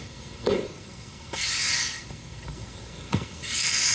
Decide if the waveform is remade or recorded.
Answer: remade